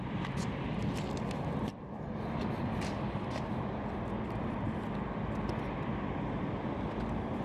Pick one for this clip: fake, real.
real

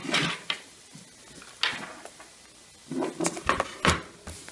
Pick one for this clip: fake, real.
real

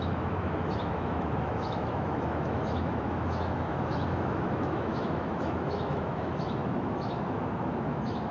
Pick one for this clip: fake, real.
fake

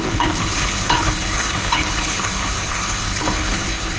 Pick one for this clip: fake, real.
fake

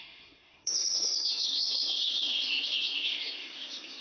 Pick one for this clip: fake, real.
fake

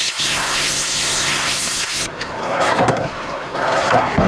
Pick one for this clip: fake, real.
fake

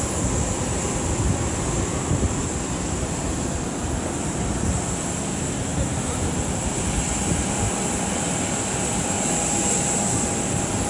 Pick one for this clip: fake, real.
real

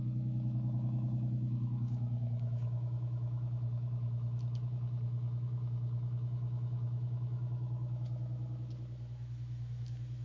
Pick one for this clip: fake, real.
fake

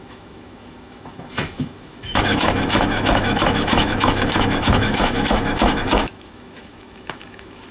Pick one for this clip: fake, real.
fake